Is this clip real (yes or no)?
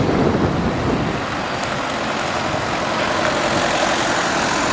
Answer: yes